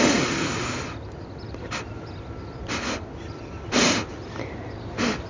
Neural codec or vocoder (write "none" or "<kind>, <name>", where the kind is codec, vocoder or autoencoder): none